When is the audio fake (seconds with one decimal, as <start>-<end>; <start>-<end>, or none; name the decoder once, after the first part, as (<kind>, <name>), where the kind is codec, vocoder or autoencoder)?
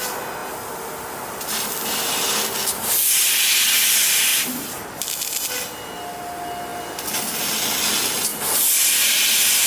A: 4.3-5.0 (vocoder, BigVGAN v2); 8.3-9.1